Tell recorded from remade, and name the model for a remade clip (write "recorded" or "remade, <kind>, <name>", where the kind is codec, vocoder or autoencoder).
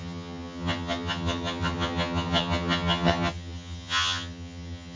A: remade, vocoder, HiFi-GAN